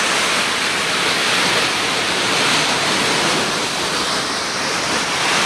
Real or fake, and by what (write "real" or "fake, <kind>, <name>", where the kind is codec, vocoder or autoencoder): fake, vocoder, BigVGAN v2